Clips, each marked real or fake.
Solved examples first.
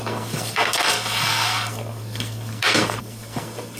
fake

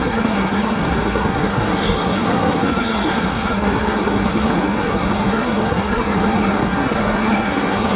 fake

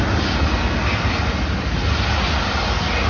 real